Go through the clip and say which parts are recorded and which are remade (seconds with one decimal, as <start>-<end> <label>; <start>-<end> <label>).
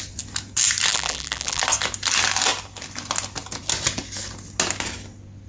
0.0-0.9 recorded; 0.9-1.6 remade; 1.6-5.5 recorded